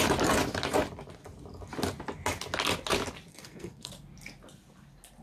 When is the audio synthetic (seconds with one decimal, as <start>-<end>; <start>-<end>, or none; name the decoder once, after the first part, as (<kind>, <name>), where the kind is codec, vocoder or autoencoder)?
3.3-3.9 (codec, SNAC)